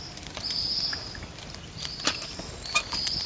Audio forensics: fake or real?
real